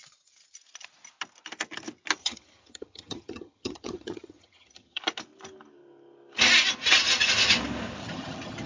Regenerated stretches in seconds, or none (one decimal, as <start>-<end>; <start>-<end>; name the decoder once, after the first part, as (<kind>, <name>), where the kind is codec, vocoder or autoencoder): 2.2-5.0 (vocoder, HiFi-GAN); 8.0-8.7

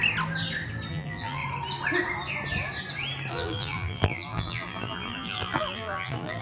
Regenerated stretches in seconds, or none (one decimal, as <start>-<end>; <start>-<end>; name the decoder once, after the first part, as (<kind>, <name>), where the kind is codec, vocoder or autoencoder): 0.9-1.4 (vocoder, BigVGAN v2); 3.3-6.4

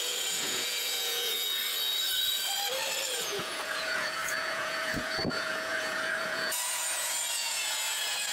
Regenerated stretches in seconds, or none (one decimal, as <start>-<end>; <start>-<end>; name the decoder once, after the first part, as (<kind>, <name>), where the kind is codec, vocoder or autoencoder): 0.0-1.6 (vocoder, Vocos); 3.1-8.3